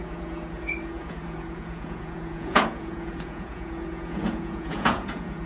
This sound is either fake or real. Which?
fake